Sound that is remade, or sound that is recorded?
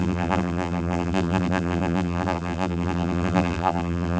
remade